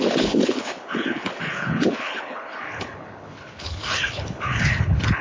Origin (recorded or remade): remade